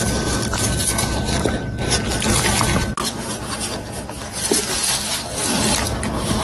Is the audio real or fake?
real